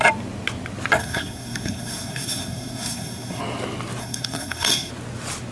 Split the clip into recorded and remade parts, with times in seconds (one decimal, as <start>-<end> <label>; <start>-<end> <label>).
0.0-1.0 recorded; 1.0-3.4 remade; 3.4-4.0 recorded; 4.0-4.9 remade; 4.9-5.5 recorded